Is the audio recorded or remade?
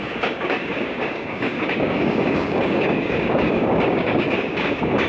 remade